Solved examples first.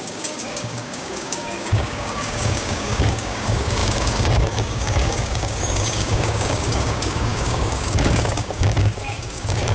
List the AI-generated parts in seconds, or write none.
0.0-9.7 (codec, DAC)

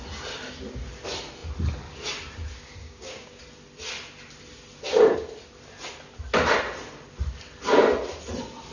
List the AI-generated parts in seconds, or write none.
2.8-3.4 (codec, DAC)

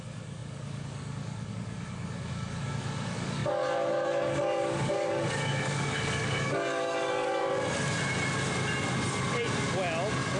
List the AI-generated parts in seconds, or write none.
0.0-7.4 (codec, DAC)

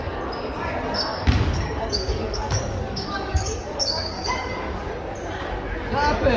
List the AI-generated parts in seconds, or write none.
1.1-4.9 (codec, DAC)

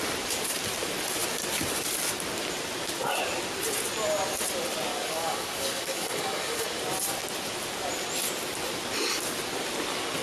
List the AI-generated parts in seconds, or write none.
4.9-6.8 (codec, DAC)

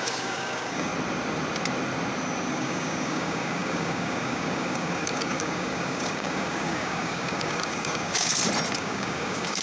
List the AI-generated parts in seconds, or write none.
0.0-0.9 (codec, DAC); 2.5-8.3; 8.8-9.6

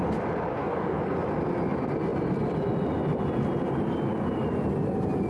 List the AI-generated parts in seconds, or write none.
0.5-1.0 (codec, DAC)